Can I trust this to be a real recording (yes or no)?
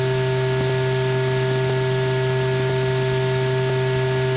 yes